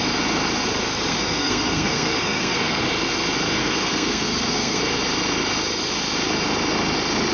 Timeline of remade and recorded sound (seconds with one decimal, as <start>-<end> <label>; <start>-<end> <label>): 0.0-1.1 recorded; 1.1-2.8 remade; 2.8-3.6 recorded; 3.6-4.8 remade; 4.8-7.3 recorded